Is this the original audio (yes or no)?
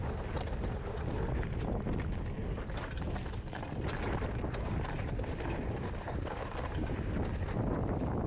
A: yes